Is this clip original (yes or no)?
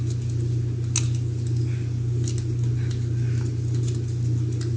yes